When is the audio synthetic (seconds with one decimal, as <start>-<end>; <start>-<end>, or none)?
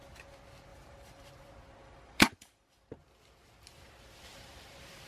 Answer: 0.7-1.3; 1.8-2.9